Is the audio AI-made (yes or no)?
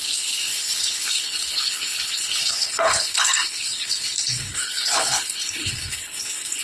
yes